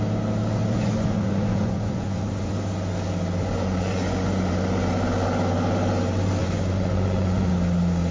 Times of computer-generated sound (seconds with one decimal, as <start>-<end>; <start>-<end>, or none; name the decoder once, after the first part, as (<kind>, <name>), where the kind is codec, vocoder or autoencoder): 0.4-2.5 (vocoder, Vocos); 3.4-4.5; 6.4-7.5